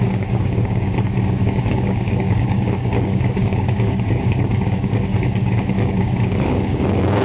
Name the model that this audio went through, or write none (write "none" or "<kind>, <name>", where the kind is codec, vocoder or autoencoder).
codec, DAC